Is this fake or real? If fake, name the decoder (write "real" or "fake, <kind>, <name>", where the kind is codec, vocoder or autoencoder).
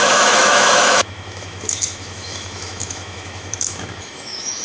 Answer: fake, autoencoder, DAC-VAE